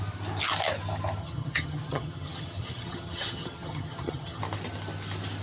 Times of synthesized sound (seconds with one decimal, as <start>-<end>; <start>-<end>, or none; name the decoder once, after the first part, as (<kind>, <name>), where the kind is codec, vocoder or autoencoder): 1.2-4.4 (vocoder, HiFi-GAN)